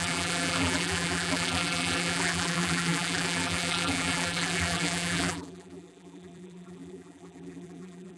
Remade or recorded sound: remade